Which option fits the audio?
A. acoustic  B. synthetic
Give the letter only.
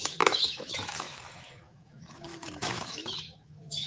B